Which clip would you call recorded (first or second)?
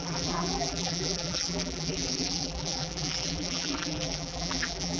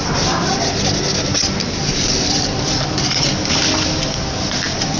second